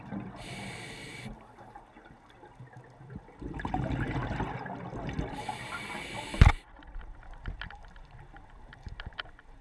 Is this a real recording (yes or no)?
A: yes